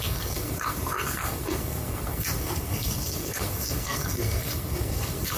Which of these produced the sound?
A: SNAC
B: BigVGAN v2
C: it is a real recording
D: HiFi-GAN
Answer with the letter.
A